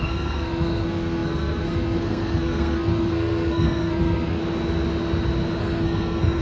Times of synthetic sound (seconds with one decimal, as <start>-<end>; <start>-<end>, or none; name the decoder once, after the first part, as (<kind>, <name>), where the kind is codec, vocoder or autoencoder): 0.0-4.4 (codec, SNAC); 5.6-6.4